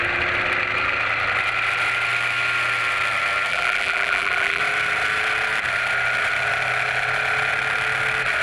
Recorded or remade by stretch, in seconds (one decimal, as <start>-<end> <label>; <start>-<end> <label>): 0.0-3.5 recorded; 3.5-4.6 remade; 4.6-8.4 recorded